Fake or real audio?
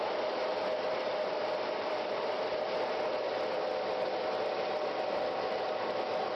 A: real